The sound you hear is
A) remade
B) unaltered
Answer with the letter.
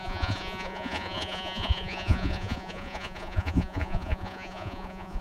A